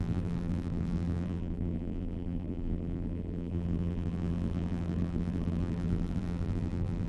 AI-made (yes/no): yes